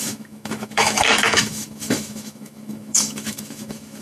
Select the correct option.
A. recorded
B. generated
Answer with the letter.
B